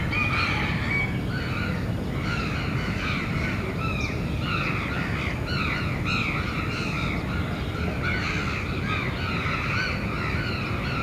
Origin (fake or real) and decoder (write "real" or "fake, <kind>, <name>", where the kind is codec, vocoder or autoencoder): real